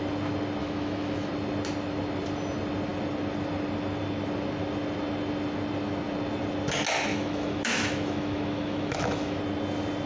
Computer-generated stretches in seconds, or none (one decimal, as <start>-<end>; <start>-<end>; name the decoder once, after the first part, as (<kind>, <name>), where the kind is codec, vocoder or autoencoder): 0.6-1.3 (autoencoder, DAC-VAE); 7.1-9.4